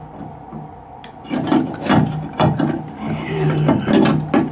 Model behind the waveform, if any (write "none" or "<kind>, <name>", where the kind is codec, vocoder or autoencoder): none